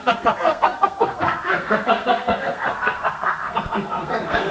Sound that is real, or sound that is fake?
fake